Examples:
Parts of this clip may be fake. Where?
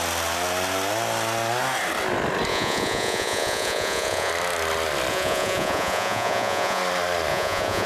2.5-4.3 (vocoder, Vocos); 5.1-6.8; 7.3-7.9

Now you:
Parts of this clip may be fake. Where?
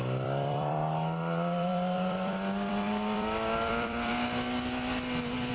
0.0-4.1 (vocoder, BigVGAN v2)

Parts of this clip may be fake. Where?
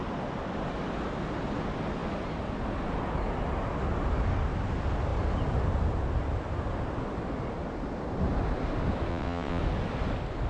9.1-9.6 (vocoder, WaveNeXt)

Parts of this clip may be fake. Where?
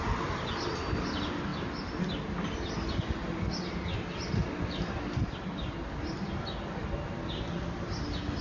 none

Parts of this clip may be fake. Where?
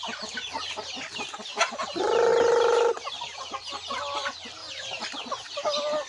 none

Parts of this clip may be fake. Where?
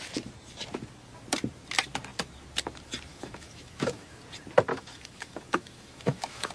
3.1-4.2 (autoencoder, DAC-VAE); 4.7-6.5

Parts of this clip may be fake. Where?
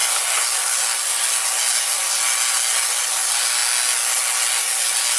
none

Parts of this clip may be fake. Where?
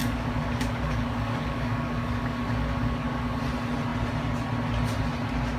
0.0-3.4 (codec, DAC)